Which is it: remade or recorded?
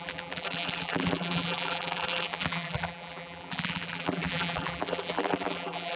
remade